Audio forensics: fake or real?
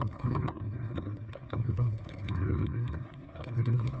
fake